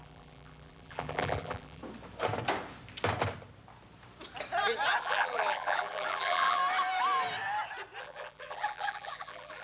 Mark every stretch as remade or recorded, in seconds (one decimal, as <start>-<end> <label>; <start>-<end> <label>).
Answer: 0.0-1.8 remade; 1.8-5.0 recorded; 5.0-6.6 remade; 6.6-8.0 recorded; 8.0-9.6 remade